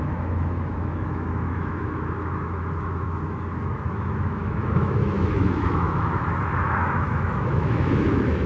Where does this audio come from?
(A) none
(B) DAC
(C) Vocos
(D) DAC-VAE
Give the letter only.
D